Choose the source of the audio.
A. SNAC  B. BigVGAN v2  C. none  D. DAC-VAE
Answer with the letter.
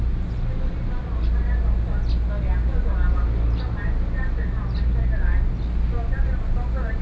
C